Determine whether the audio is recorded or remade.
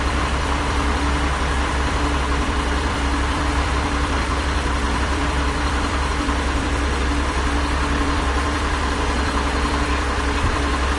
remade